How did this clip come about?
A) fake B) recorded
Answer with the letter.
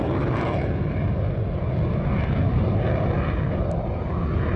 B